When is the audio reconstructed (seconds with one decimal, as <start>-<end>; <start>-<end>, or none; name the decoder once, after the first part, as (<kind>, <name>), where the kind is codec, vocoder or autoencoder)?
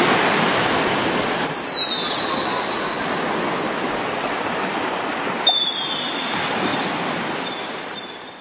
none